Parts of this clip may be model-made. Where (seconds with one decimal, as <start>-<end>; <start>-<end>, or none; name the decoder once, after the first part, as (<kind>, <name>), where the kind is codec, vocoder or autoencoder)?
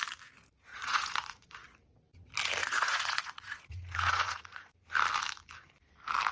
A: 0.7-1.5 (vocoder, Vocos); 2.6-4.9